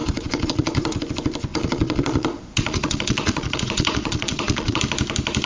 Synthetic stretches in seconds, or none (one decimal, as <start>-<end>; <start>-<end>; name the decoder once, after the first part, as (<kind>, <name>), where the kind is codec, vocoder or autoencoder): 0.0-1.0 (vocoder, Vocos); 1.5-4.8